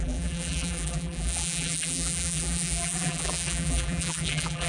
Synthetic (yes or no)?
yes